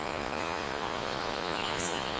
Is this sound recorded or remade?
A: remade